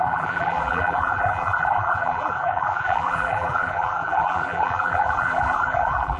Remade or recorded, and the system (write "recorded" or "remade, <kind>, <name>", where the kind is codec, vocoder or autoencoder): remade, vocoder, BigVGAN v2